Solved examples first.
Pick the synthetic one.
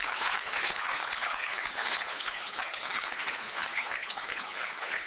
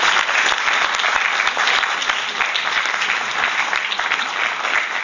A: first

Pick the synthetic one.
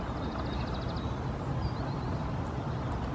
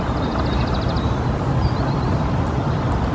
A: second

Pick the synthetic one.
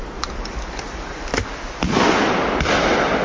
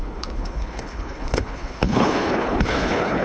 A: second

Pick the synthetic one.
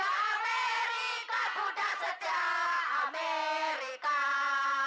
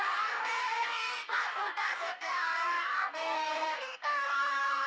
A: second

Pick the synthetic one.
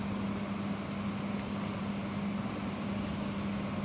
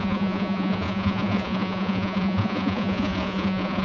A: second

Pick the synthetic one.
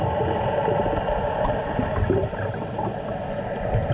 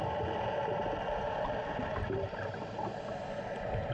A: first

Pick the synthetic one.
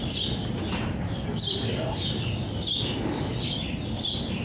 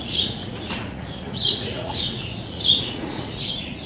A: second